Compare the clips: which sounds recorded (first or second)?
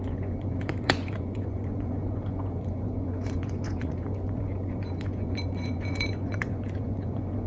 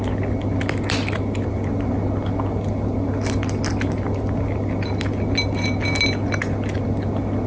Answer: second